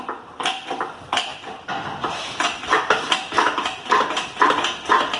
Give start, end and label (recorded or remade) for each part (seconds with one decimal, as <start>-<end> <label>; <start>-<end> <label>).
0.0-5.2 recorded